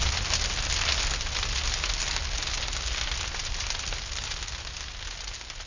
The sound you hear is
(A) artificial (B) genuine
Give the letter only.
B